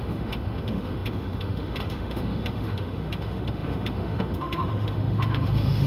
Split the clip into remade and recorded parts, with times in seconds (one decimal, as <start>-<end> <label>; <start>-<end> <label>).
0.0-5.9 remade